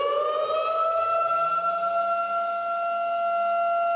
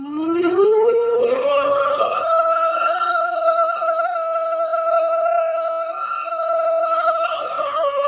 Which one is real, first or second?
first